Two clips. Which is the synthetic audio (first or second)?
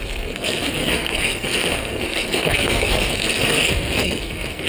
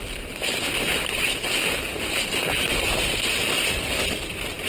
first